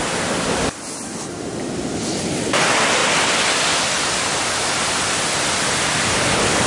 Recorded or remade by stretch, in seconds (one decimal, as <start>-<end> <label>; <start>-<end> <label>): 0.0-6.7 recorded